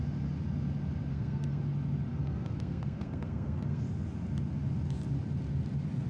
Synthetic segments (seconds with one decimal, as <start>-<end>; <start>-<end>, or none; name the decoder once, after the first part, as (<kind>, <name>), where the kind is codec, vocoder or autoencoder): 1.1-1.6 (codec, SNAC); 2.1-3.8